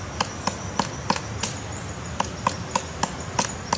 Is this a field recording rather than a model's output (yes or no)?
yes